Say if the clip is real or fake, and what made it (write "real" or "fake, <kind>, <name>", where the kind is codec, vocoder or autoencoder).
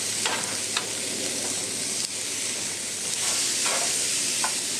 real